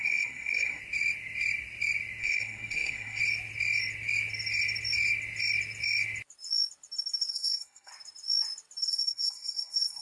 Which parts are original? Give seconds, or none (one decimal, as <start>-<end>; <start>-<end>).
0.8-2.2; 3.2-7.3; 7.9-8.9